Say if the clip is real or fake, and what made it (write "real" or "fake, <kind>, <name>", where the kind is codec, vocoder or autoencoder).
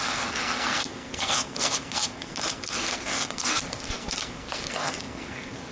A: fake, codec, SNAC